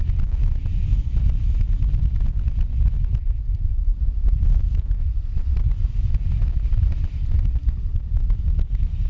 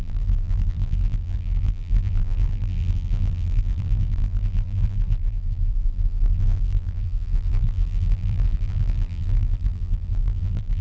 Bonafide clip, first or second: first